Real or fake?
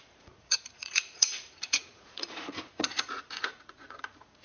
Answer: fake